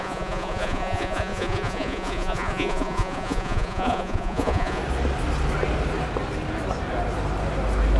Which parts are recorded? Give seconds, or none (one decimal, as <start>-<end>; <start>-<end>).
4.8-8.0